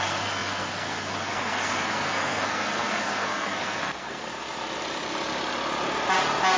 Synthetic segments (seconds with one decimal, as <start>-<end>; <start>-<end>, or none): 0.0-4.3